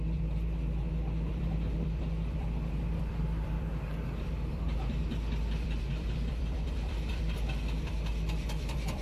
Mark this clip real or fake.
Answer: fake